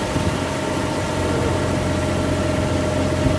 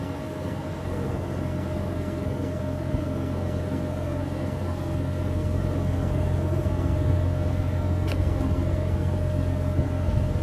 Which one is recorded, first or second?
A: first